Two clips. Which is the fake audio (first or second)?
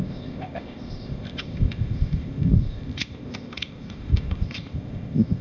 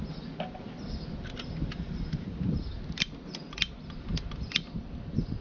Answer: first